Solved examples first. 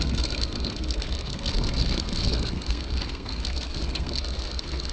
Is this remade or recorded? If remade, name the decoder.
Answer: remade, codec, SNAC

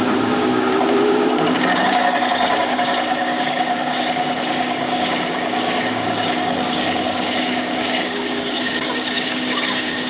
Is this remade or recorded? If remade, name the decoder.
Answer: remade, codec, DAC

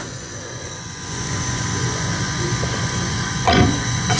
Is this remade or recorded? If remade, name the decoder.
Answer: remade, vocoder, Vocos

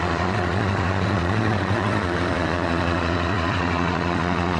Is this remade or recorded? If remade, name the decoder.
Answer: remade, vocoder, Vocos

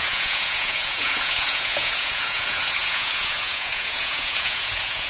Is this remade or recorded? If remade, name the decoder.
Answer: remade, vocoder, Vocos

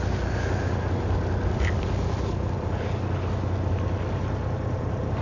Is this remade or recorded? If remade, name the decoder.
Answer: recorded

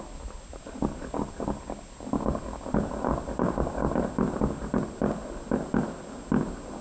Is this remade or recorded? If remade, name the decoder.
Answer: recorded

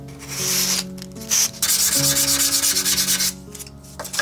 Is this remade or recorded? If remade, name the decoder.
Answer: recorded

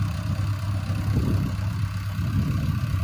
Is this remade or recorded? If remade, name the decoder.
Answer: remade, vocoder, BigVGAN v2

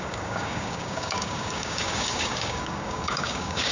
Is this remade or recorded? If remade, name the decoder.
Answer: remade, codec, DAC